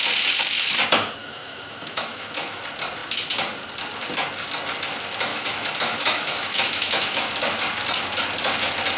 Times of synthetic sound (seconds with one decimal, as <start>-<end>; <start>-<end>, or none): 1.2-2.6; 5.3-7.3